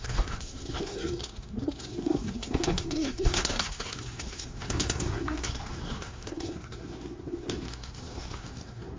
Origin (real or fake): fake